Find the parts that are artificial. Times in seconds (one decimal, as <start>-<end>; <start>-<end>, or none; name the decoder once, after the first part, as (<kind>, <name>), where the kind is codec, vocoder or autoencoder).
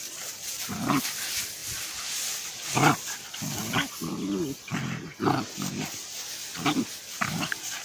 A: none